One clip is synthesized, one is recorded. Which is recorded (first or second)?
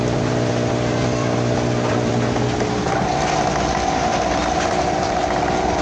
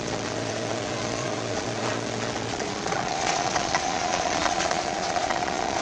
first